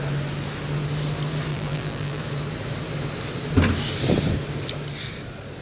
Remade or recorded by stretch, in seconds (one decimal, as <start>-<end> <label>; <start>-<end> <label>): 0.0-1.5 recorded; 1.5-2.2 remade; 2.2-5.6 recorded